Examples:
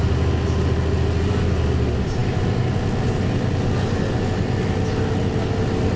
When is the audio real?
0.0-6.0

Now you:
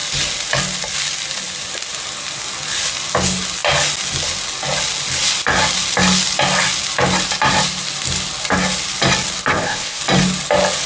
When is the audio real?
0.0-9.5; 10.0-10.9

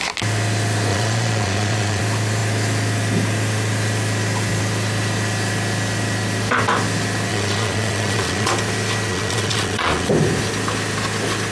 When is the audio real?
0.0-0.9; 2.0-7.3; 8.5-9.1; 10.1-11.5